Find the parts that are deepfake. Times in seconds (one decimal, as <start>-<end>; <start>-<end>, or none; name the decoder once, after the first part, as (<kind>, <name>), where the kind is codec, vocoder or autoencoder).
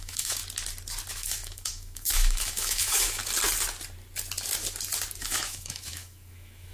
0.0-0.4 (autoencoder, DAC-VAE); 1.1-3.2; 5.2-6.7